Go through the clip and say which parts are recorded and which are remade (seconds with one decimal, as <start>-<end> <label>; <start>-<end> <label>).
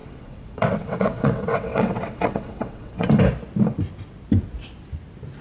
0.0-3.2 remade; 3.2-5.4 recorded